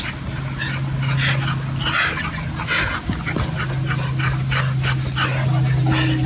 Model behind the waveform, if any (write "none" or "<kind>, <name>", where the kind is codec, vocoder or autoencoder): none